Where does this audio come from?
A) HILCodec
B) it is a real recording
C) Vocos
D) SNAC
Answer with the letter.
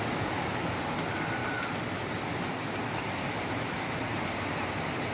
B